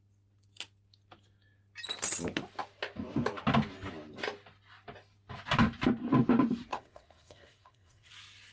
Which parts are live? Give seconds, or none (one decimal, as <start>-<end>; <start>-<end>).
0.0-6.7; 8.1-8.5